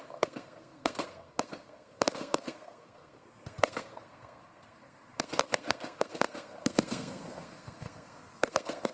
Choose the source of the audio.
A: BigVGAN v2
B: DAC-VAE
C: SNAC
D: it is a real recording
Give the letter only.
C